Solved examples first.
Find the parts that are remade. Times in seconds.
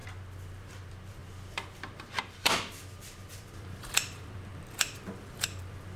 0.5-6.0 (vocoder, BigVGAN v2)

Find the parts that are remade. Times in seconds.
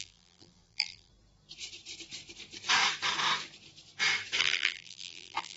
0.0-1.1 (vocoder, BigVGAN v2); 4.4-5.6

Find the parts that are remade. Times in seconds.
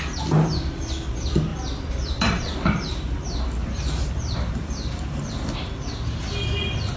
1.5-5.3 (vocoder, BigVGAN v2)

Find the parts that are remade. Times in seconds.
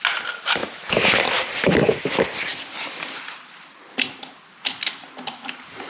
0.6-1.4 (vocoder, BigVGAN v2); 2.5-4.6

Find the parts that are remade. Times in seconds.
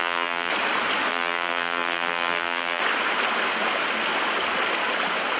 0.0-0.5 (vocoder, BigVGAN v2); 1.1-2.8